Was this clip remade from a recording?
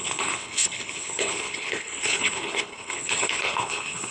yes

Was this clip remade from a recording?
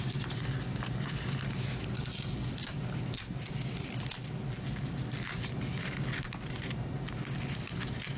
no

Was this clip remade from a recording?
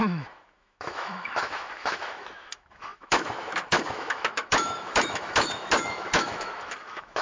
yes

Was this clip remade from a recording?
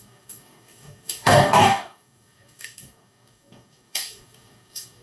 yes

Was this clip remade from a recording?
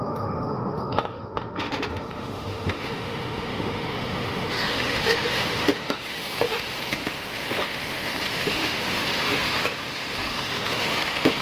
yes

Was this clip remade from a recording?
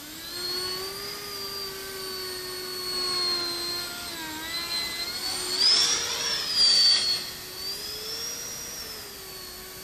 no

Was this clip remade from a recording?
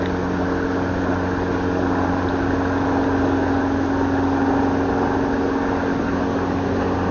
no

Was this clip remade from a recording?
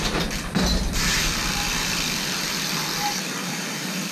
yes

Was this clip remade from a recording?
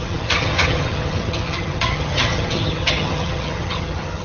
yes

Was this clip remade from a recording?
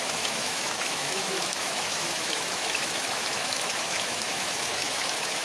yes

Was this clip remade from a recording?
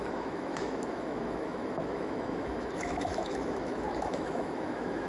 yes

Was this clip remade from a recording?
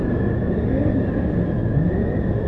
no